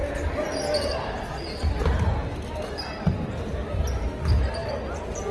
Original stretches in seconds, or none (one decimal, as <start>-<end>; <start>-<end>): 0.0-5.3